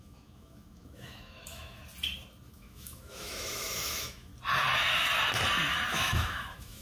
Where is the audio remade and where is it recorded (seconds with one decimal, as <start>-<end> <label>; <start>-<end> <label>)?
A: 0.0-1.8 remade; 1.8-2.5 recorded; 2.5-4.3 remade; 4.3-5.9 recorded; 5.9-6.8 remade